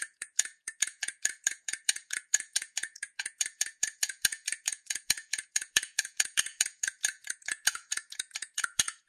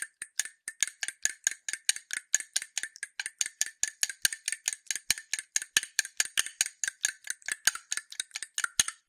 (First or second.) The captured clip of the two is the second